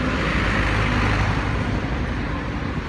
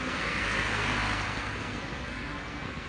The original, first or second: first